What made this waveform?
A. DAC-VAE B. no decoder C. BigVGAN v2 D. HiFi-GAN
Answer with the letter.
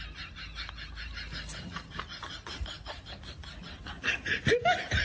B